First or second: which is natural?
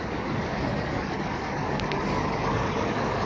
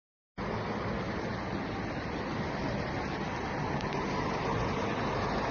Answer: second